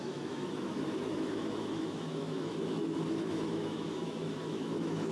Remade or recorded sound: remade